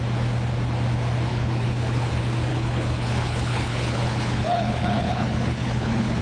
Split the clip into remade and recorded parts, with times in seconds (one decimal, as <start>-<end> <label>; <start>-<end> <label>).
0.0-1.3 recorded; 1.3-2.1 remade; 2.1-2.5 recorded; 2.5-6.2 remade